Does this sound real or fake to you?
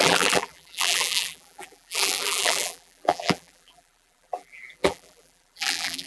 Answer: fake